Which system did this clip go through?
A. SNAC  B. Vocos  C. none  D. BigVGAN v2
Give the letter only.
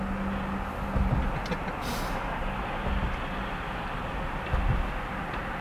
C